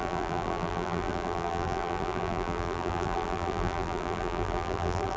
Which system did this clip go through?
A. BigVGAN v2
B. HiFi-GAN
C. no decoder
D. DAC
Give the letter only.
A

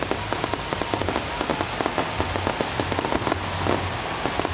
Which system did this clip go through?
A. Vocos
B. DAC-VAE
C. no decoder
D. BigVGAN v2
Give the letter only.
C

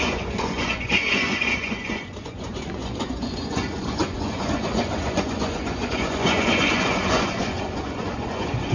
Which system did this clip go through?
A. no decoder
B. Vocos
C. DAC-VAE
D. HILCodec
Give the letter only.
B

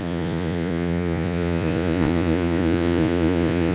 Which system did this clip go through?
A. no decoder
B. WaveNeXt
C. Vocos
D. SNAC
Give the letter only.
C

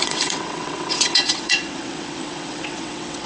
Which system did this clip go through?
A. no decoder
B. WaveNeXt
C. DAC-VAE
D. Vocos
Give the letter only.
B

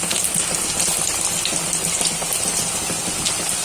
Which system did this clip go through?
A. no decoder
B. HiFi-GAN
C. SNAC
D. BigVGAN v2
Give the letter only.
A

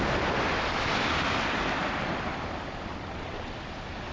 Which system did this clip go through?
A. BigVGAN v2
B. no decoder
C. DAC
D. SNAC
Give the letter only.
A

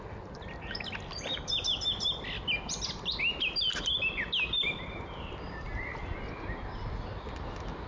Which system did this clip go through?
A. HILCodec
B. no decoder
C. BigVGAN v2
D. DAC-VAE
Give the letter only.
B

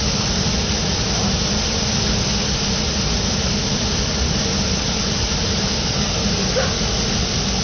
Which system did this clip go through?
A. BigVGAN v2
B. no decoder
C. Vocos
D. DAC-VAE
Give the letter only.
B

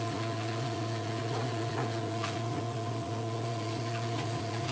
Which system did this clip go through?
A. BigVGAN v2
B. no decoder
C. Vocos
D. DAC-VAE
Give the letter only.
C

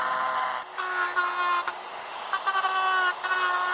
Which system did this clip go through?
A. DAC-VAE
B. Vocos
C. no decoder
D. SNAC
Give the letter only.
C